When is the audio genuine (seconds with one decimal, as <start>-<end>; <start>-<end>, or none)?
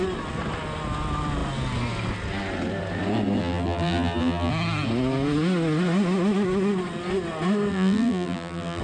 0.0-3.4; 4.5-7.7